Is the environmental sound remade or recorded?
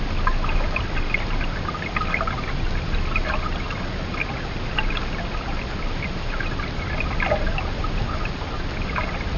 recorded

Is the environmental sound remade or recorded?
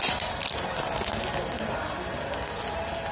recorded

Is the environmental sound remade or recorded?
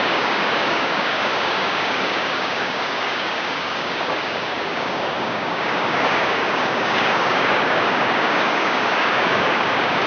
remade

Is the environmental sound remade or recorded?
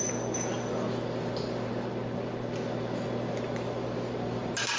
recorded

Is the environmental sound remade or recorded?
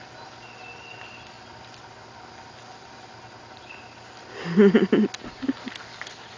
recorded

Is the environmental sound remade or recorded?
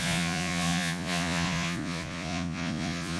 remade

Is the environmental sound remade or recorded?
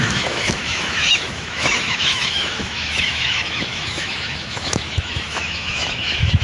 remade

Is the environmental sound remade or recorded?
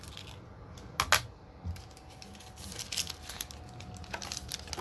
recorded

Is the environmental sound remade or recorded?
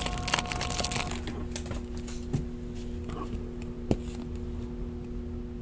recorded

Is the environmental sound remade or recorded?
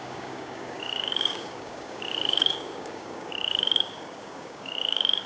remade